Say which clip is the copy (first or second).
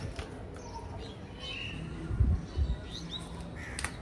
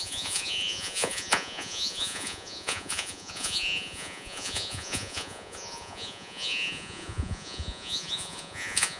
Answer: second